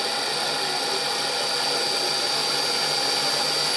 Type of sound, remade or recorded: recorded